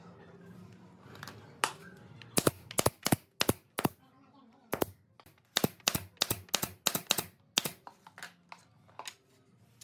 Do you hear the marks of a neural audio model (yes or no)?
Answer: no